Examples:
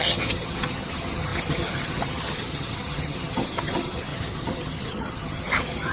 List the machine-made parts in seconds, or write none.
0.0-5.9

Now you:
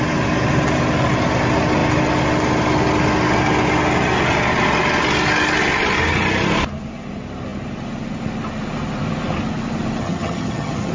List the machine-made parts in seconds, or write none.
10.0-10.9

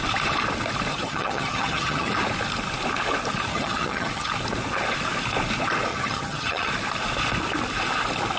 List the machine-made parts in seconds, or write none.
0.9-2.1; 3.5-4.3; 5.9-6.7

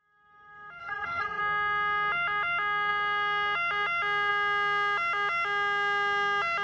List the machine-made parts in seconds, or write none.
0.8-1.4